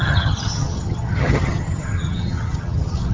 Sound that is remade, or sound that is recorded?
remade